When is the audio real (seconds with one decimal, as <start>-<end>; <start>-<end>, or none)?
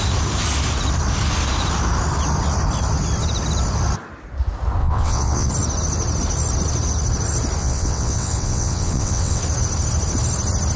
0.0-4.8; 5.5-7.6; 9.4-10.8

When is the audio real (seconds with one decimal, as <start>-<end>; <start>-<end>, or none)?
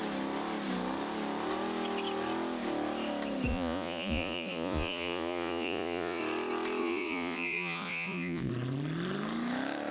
0.0-3.5; 6.2-6.8; 8.5-9.9